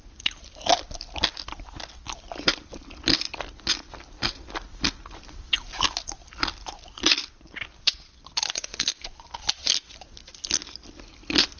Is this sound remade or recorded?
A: recorded